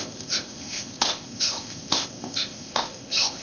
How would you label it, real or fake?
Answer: fake